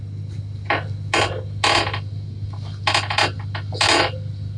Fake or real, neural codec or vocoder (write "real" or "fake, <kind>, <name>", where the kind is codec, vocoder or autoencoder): real